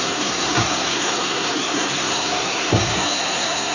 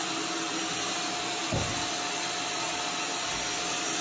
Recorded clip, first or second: second